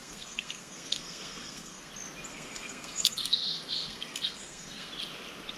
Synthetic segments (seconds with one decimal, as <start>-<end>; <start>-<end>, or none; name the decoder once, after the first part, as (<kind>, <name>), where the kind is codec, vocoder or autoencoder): 0.0-1.9 (codec, SNAC); 2.3-4.9

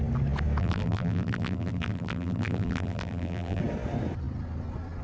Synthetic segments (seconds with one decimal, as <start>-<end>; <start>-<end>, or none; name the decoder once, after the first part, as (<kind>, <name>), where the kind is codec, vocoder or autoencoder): 0.6-3.6 (vocoder, BigVGAN v2)

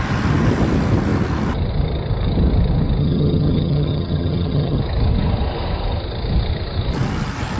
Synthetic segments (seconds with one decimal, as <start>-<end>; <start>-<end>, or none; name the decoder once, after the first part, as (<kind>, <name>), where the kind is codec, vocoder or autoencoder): 3.0-4.8 (vocoder, HiFi-GAN)

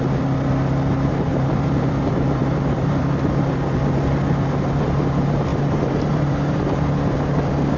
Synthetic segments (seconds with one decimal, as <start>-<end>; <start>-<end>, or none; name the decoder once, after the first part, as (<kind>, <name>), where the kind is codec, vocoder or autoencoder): 1.3-3.5 (vocoder, BigVGAN v2); 5.5-6.6

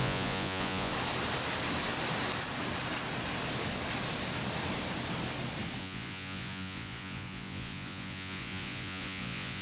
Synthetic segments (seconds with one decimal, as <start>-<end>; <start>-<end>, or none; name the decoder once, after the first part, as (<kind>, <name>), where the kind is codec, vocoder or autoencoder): 0.0-0.9 (vocoder, Vocos); 5.8-9.6

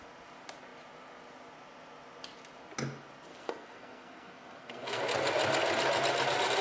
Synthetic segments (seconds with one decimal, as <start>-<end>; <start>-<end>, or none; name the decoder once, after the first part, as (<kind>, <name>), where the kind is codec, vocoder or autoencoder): 3.3-5.0 (codec, SNAC)

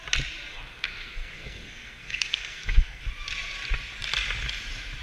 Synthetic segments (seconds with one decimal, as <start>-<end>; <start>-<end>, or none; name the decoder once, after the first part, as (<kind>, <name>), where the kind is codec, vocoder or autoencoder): 0.5-3.0 (codec, SNAC)